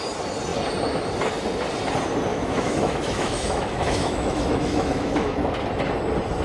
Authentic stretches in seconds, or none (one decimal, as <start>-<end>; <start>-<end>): 0.0-2.3; 5.5-6.4